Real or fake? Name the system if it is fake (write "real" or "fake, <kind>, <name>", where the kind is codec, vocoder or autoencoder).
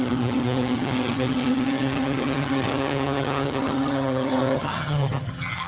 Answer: fake, vocoder, HiFi-GAN